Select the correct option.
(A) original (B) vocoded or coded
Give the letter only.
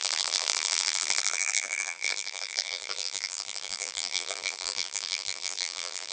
B